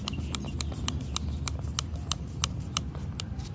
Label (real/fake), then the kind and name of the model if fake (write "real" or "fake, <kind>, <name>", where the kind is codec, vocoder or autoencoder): real